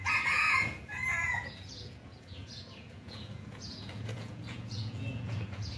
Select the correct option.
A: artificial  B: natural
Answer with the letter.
A